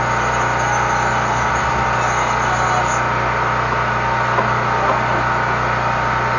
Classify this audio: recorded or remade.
recorded